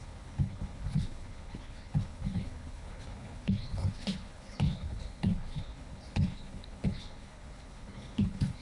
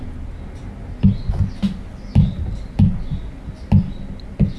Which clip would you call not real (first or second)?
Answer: first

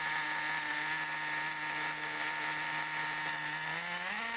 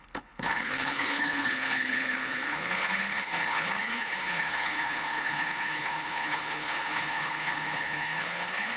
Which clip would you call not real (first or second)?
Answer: second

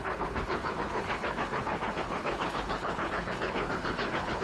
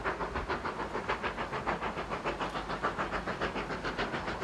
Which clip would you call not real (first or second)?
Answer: first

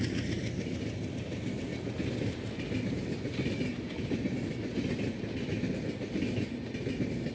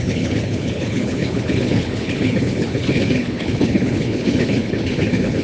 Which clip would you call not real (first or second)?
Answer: second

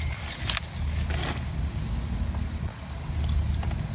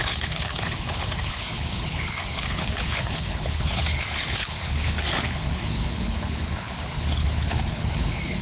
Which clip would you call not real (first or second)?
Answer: second